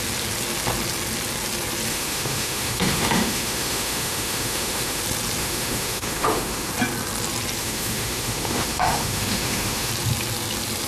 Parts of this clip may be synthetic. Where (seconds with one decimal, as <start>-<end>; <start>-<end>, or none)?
1.9-5.0; 5.4-6.7; 7.6-9.9